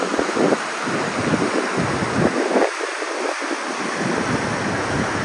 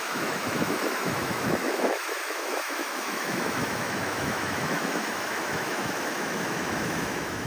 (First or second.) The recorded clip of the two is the first